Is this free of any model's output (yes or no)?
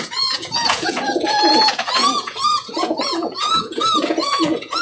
no